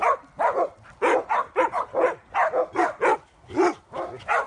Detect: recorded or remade recorded